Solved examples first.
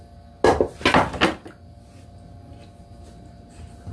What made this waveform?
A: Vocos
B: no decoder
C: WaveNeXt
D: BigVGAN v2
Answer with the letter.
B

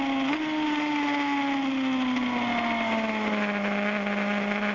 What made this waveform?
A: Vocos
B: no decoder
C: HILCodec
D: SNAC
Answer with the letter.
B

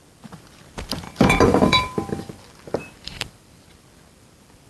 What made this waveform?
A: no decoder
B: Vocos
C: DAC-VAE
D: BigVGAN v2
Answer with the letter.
D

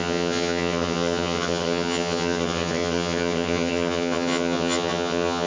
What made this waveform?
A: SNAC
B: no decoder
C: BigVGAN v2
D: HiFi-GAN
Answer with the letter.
D